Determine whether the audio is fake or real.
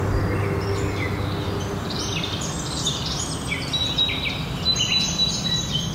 real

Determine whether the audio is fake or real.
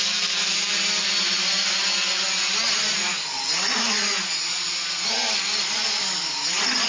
real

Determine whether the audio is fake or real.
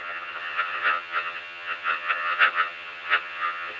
fake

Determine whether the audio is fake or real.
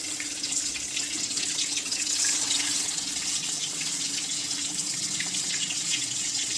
fake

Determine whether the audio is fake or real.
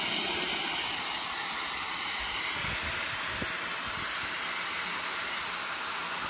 real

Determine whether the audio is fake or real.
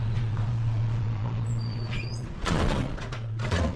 fake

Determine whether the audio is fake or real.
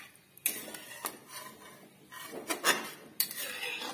real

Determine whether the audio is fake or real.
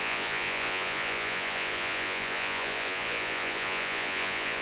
fake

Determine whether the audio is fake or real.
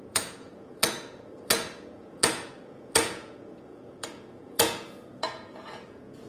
fake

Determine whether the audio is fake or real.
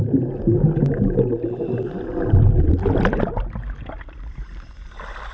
real